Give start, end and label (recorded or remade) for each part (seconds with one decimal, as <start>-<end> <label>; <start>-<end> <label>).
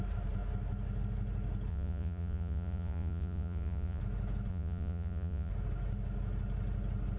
0.0-1.7 recorded; 1.7-4.0 remade; 4.0-4.5 recorded; 4.5-5.5 remade; 5.5-7.2 recorded